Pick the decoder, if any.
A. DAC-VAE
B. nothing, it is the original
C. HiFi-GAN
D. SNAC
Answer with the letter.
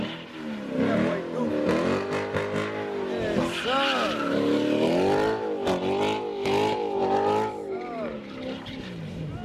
B